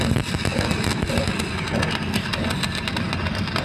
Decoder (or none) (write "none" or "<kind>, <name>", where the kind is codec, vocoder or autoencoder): none